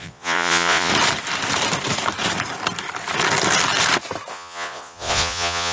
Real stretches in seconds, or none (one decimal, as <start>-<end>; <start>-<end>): 0.9-4.3